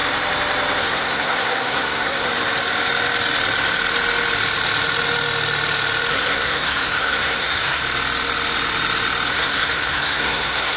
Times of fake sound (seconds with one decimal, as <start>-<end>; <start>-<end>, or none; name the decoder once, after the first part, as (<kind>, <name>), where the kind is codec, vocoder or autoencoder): 0.8-2.3 (codec, SNAC); 6.1-7.8; 9.3-10.8